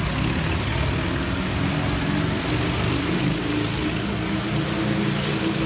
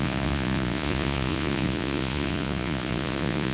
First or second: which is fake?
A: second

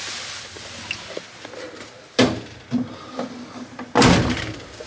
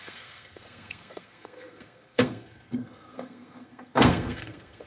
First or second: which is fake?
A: second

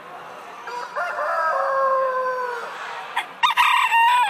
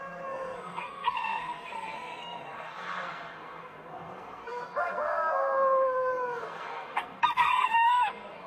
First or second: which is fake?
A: second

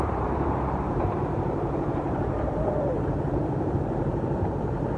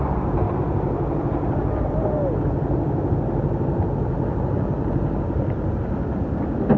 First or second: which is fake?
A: first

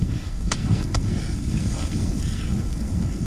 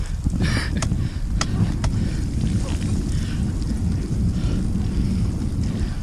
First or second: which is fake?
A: first